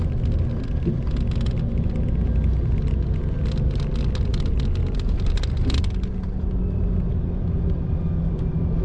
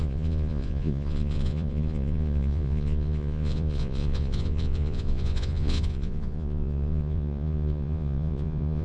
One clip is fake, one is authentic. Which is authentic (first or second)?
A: first